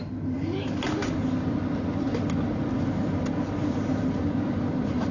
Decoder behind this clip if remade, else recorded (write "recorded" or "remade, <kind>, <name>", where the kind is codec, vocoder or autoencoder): remade, vocoder, BigVGAN v2